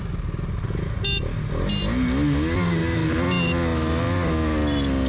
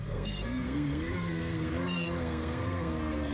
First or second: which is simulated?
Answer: second